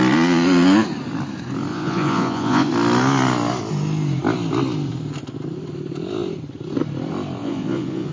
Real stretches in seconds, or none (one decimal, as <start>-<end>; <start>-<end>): 0.0-1.7; 2.7-7.4